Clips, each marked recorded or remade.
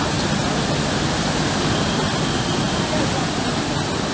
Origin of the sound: recorded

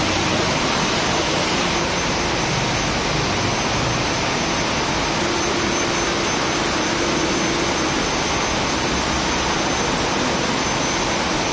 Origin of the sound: recorded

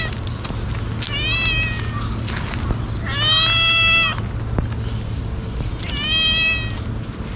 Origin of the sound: recorded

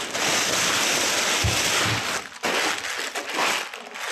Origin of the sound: recorded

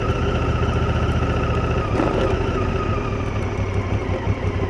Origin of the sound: recorded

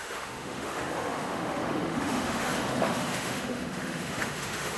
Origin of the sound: remade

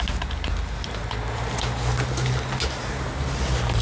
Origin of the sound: recorded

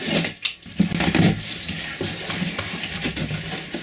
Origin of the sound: recorded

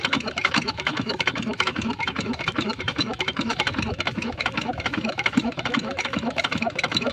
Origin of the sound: remade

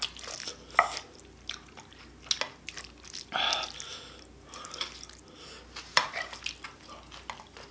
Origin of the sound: recorded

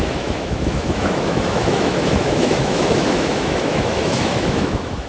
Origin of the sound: remade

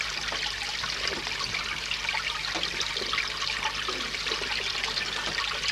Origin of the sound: recorded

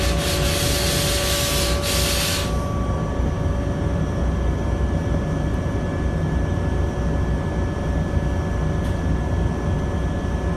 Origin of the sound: recorded